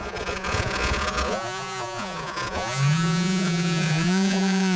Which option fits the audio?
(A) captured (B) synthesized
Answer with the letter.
B